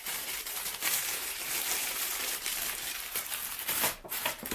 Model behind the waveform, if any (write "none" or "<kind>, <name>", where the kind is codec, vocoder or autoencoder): vocoder, BigVGAN v2